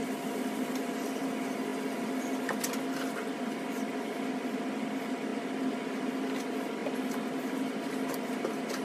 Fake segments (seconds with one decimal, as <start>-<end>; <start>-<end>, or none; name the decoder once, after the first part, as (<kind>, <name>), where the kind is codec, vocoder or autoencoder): none